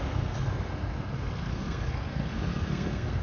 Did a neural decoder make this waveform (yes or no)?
yes